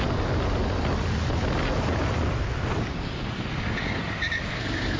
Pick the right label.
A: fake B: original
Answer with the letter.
B